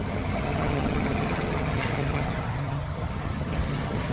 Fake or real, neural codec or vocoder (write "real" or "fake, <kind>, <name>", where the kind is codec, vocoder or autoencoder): fake, vocoder, HiFi-GAN